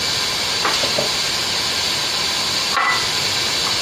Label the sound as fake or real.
real